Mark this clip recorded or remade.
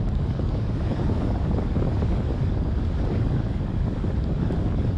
remade